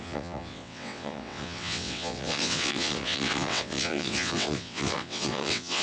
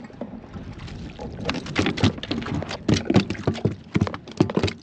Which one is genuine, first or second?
second